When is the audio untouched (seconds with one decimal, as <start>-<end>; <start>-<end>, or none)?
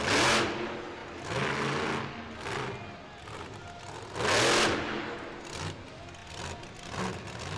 0.0-7.6